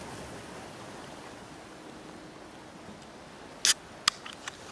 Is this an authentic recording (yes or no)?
yes